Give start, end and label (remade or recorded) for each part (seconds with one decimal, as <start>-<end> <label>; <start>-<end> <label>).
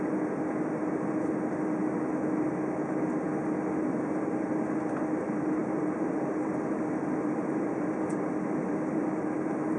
0.0-5.6 recorded; 5.6-9.8 remade